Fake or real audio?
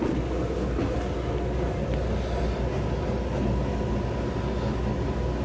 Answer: real